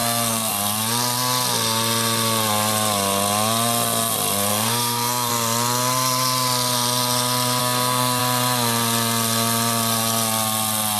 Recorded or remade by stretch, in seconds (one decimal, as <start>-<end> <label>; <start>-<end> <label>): 0.0-0.5 remade; 0.5-4.5 recorded; 4.5-5.3 remade; 5.3-7.6 recorded; 7.6-8.2 remade; 8.2-11.0 recorded